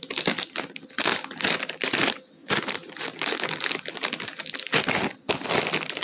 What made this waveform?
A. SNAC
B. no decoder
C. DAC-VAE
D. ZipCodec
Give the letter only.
B